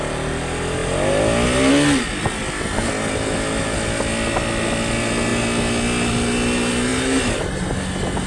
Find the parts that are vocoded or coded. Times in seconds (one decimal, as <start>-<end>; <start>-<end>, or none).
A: none